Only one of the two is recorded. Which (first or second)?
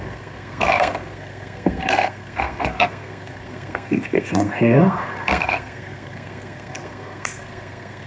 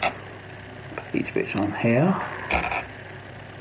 second